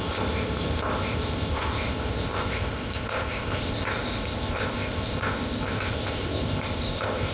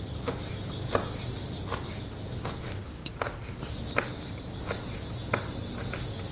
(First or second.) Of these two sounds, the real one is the second